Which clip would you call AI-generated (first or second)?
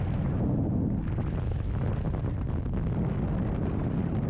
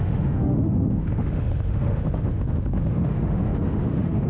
second